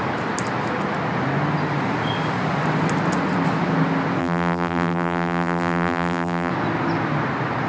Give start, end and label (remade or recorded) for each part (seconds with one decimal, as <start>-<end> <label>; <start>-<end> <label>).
0.0-4.2 recorded; 4.2-6.5 remade; 6.5-7.7 recorded